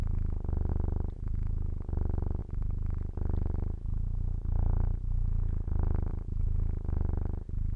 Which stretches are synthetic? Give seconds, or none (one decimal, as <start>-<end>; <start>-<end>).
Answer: none